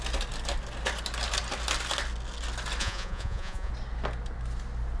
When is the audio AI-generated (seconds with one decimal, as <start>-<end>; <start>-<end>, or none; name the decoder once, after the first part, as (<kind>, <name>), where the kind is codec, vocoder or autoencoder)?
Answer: 2.8-3.7 (vocoder, Vocos)